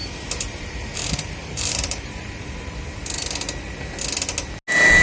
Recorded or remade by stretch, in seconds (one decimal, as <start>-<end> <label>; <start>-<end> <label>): 0.0-2.8 remade; 2.8-5.0 recorded